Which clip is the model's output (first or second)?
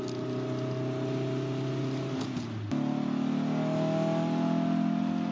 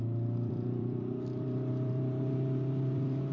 second